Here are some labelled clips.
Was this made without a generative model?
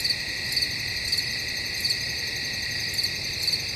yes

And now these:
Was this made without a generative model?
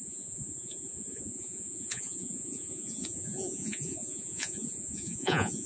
no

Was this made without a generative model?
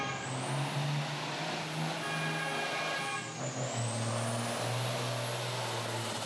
yes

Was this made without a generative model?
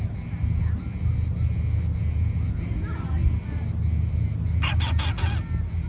yes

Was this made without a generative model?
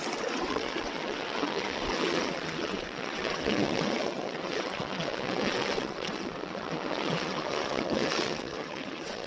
no